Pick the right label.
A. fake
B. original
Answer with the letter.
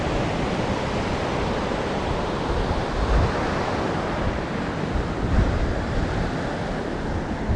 B